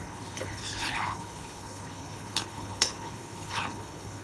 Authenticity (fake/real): fake